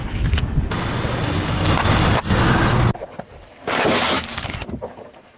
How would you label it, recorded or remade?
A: recorded